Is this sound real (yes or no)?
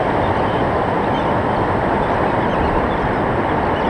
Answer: yes